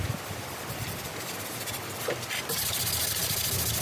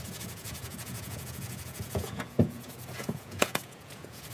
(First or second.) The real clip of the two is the first